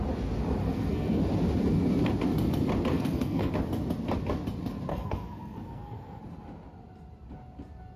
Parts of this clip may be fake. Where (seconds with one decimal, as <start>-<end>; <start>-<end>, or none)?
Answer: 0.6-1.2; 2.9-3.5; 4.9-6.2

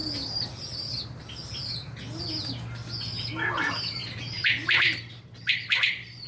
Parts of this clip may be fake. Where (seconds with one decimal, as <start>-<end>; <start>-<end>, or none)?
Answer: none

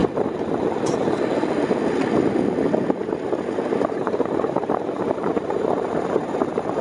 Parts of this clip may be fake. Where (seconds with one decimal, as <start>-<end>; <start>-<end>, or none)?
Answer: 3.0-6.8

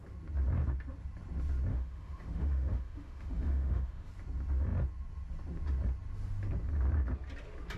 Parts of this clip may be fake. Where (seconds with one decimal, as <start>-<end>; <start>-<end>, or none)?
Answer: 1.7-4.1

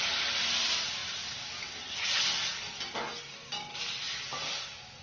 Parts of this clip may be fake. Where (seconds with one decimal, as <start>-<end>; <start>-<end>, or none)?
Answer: 3.5-4.6